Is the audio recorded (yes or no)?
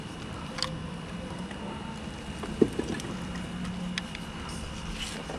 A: yes